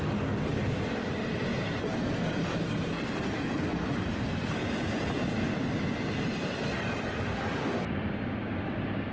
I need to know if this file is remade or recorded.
recorded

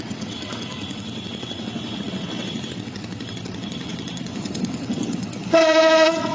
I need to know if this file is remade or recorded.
remade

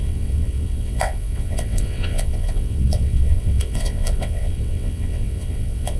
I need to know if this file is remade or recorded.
remade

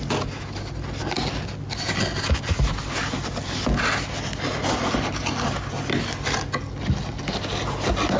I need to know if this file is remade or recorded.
recorded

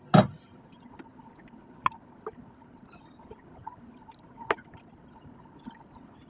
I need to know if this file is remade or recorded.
recorded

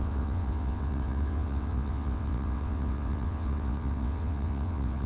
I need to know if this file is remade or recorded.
remade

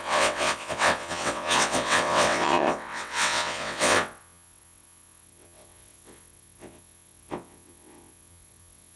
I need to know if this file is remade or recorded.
remade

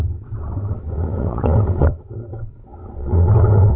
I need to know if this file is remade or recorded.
remade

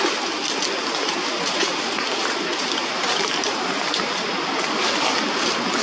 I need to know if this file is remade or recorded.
recorded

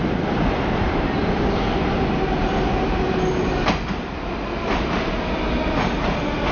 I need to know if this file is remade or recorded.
recorded